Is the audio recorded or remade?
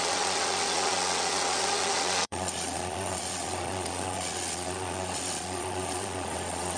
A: remade